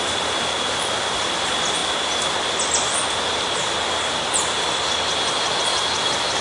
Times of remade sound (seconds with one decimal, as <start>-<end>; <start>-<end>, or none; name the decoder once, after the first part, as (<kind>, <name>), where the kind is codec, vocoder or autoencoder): none